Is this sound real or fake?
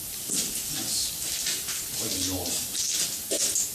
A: real